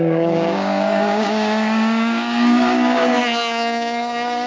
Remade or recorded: remade